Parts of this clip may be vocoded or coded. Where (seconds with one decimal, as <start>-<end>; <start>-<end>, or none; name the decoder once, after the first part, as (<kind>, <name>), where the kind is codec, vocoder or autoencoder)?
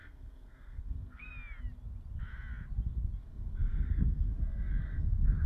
0.0-1.3 (codec, SNAC); 3.2-5.5